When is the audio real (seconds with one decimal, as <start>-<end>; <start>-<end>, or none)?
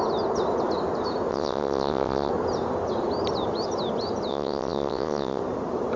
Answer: 0.0-1.3; 2.3-4.3; 5.4-6.0